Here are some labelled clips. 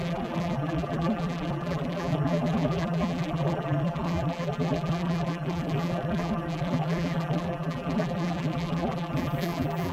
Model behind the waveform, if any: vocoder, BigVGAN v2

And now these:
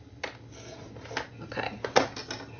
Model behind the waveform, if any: none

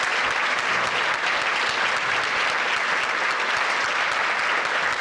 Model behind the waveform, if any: none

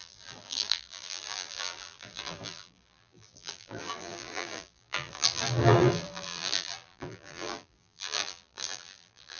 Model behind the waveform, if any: vocoder, BigVGAN v2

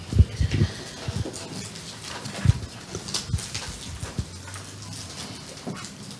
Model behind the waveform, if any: none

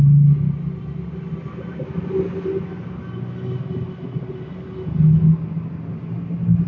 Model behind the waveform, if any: none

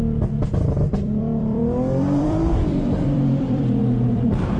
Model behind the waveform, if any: vocoder, BigVGAN v2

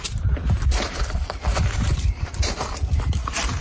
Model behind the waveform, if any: vocoder, BigVGAN v2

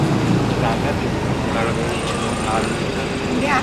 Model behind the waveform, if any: none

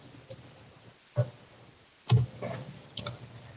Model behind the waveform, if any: none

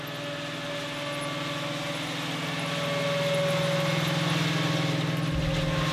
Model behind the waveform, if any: none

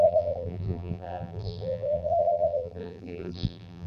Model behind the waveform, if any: vocoder, BigVGAN v2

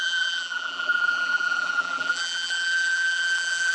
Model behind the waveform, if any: vocoder, BigVGAN v2